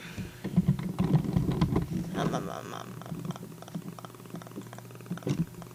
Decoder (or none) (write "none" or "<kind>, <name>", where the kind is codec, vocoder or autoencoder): none